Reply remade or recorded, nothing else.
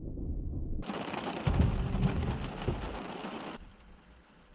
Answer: recorded